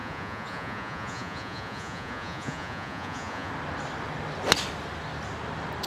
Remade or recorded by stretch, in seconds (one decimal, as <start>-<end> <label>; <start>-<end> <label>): 0.0-3.5 remade; 3.5-5.9 recorded